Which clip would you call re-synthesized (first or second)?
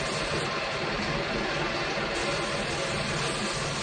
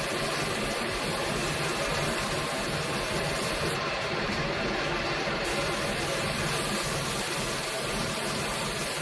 second